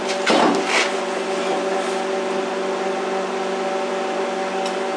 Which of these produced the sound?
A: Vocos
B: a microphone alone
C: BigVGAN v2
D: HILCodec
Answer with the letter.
B